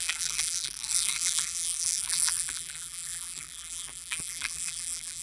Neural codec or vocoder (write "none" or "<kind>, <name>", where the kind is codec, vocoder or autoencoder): vocoder, BigVGAN v2